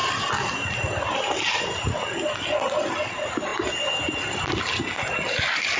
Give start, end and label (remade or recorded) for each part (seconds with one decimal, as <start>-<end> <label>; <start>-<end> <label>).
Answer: 0.0-5.8 recorded